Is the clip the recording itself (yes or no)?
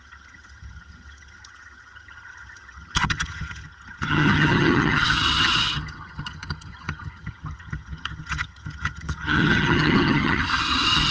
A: no